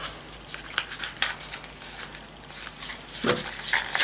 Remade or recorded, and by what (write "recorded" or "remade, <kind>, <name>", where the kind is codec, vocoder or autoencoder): recorded